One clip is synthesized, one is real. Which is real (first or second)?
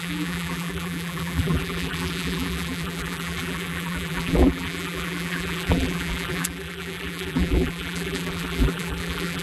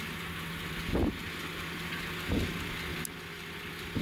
second